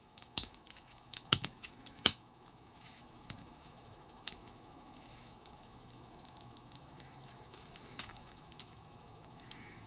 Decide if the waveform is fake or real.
fake